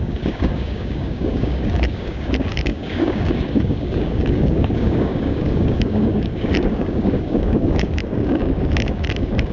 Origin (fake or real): fake